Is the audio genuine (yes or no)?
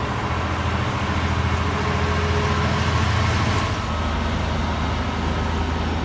yes